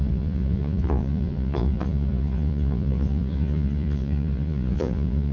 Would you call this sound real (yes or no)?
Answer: no